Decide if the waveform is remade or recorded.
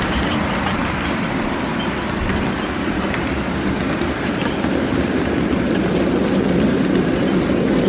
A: recorded